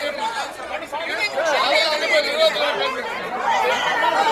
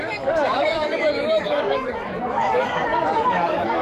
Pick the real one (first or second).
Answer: first